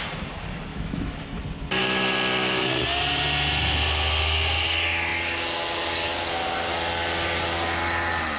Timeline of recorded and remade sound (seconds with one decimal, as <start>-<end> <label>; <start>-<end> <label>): 0.0-0.7 recorded; 0.7-1.4 remade; 1.4-8.4 recorded